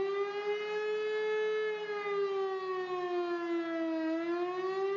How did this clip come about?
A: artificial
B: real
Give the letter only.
B